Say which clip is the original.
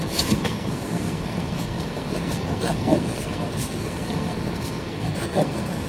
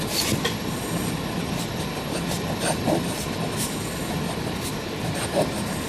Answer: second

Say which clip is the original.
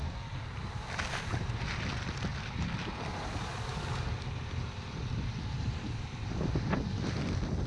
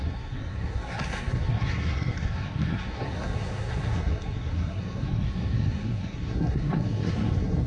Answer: first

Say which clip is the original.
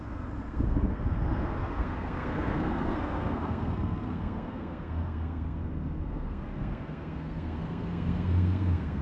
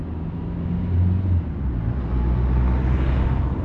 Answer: second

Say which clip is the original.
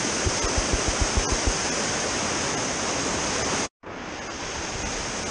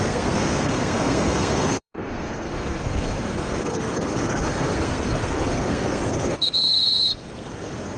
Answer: first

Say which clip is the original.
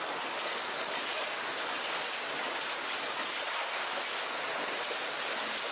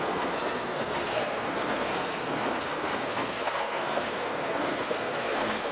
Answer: first